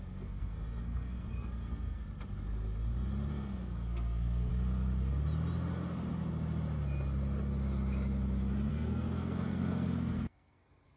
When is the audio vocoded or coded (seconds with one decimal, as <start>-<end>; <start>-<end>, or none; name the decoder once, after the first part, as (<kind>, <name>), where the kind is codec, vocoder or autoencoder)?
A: 0.0-2.0 (codec, SNAC); 3.3-4.5; 8.7-11.0